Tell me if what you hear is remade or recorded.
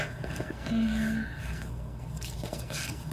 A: remade